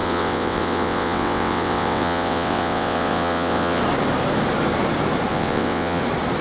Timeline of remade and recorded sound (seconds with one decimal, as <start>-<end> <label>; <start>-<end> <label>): 0.0-3.8 remade; 3.8-5.3 recorded; 5.3-6.0 remade; 6.0-6.4 recorded